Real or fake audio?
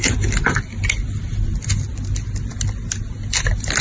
real